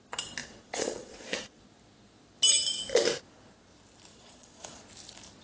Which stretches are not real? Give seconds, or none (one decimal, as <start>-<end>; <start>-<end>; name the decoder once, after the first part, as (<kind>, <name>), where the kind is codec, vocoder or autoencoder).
0.4-1.6 (vocoder, Vocos); 4.1-4.8